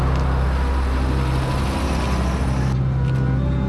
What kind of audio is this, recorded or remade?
recorded